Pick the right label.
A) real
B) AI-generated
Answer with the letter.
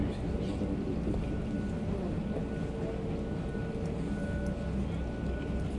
A